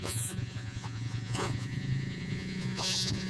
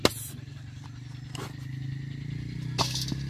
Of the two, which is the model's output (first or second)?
first